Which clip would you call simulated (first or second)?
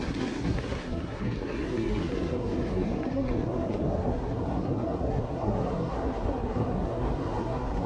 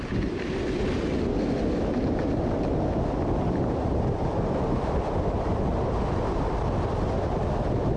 first